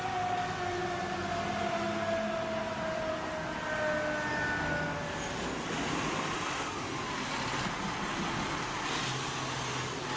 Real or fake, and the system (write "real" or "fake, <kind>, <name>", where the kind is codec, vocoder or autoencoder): real